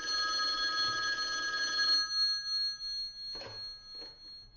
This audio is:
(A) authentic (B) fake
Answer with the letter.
A